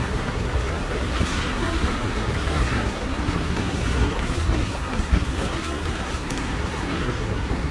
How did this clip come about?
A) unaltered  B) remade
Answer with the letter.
B